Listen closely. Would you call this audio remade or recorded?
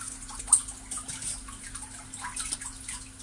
recorded